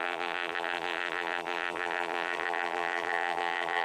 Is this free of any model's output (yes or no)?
no